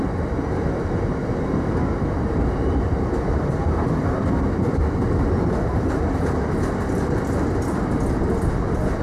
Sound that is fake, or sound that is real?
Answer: real